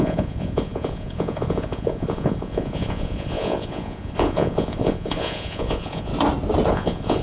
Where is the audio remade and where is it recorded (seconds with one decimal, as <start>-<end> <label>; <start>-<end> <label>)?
0.0-6.1 remade; 6.1-6.7 recorded; 6.7-7.2 remade